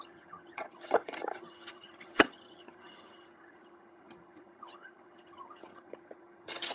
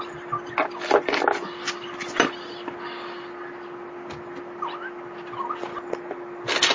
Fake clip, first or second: first